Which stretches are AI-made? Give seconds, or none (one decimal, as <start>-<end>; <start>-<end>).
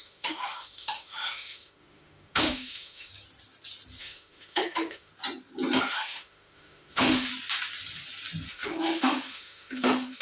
0.0-3.1; 4.0-5.1; 5.8-7.3; 8.5-10.2